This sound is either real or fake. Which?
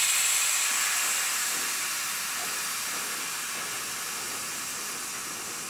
real